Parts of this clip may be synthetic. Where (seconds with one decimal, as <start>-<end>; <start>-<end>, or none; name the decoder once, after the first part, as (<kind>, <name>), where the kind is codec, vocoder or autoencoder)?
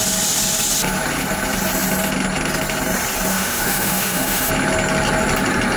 3.3-4.5 (autoencoder, DAC-VAE)